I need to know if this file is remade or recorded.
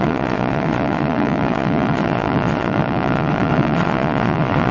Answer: remade